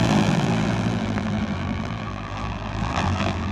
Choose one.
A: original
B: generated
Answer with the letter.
B